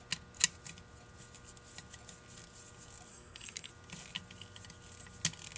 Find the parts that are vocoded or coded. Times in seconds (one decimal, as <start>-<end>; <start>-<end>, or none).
3.1-3.7